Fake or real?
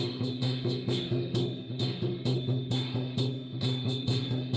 fake